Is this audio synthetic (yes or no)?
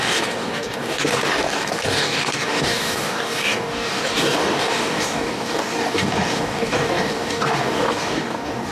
yes